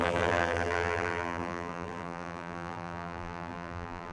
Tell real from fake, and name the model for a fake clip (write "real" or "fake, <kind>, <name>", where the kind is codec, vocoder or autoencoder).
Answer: fake, vocoder, BigVGAN v2